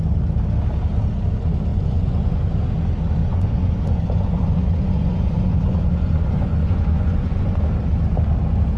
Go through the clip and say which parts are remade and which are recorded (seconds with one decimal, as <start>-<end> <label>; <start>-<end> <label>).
0.0-1.7 recorded; 1.7-2.5 remade; 2.5-3.2 recorded; 3.2-7.6 remade; 7.6-8.8 recorded